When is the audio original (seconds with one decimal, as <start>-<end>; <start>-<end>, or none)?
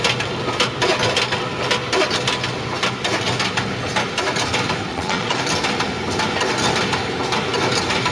0.0-4.9; 5.4-8.1